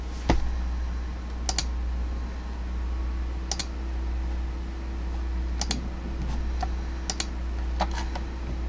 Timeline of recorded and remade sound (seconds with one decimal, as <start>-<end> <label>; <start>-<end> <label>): 0.0-8.7 recorded